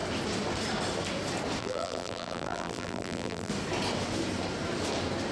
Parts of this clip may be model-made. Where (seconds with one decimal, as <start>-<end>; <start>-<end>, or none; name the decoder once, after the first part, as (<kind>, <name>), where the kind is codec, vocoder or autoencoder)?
1.6-3.5 (vocoder, BigVGAN v2)